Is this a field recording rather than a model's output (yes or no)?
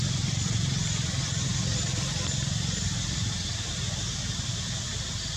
yes